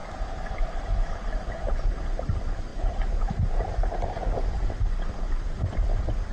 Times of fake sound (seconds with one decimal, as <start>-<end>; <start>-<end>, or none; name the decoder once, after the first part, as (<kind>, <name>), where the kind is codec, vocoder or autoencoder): 0.0-2.1 (vocoder, BigVGAN v2); 2.7-3.3